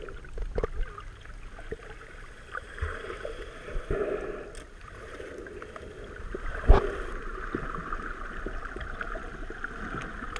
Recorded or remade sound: recorded